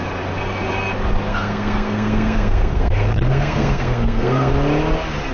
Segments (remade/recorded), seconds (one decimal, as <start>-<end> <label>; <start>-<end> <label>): 0.0-1.3 recorded; 1.3-4.5 remade; 4.5-5.3 recorded